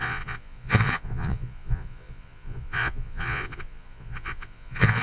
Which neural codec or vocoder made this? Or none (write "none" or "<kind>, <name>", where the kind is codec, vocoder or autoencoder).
vocoder, Vocos